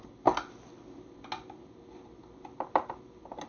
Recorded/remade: recorded